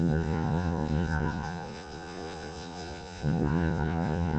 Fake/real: fake